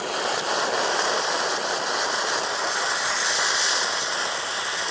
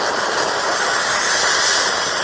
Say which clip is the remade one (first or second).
first